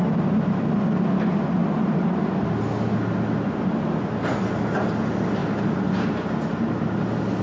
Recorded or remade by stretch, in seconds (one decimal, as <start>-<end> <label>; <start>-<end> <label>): 0.0-7.4 recorded